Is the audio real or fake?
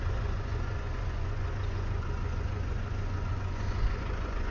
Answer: fake